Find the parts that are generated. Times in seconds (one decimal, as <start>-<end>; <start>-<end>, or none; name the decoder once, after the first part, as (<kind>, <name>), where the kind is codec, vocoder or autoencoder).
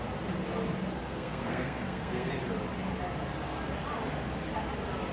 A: 1.0-2.3 (codec, SNAC)